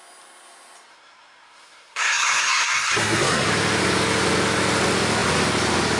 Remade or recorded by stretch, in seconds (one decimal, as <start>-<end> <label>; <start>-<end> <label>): 0.0-0.9 recorded; 0.9-3.5 remade; 3.5-6.0 recorded

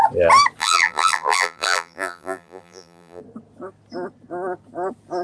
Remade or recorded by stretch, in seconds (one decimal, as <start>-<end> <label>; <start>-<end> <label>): 0.0-0.6 recorded; 0.6-3.2 remade; 3.2-5.2 recorded

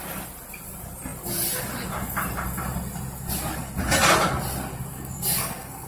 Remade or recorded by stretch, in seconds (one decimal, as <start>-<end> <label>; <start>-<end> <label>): 0.0-4.9 recorded; 4.9-5.9 remade

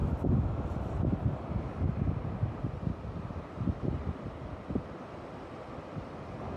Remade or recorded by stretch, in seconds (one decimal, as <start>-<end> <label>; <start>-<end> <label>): 0.0-6.6 recorded

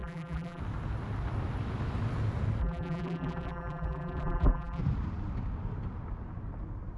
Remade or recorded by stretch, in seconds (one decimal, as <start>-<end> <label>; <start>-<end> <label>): 0.0-0.6 remade; 0.6-2.6 recorded; 2.6-4.8 remade; 4.8-7.0 recorded

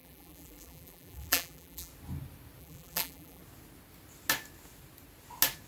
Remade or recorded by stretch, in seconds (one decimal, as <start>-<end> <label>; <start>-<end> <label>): 0.0-1.9 remade; 1.9-2.6 recorded; 2.6-3.4 remade; 3.4-5.7 recorded

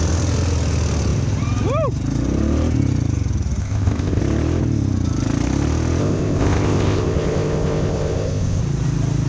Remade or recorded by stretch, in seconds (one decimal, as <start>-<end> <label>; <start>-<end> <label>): 0.0-3.6 recorded; 3.6-4.2 remade; 4.2-6.0 recorded; 6.0-8.6 remade; 8.6-9.3 recorded